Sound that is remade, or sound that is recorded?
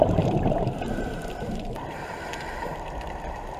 remade